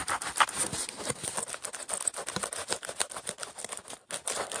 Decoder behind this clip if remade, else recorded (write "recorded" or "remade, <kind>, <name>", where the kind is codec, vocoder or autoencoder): recorded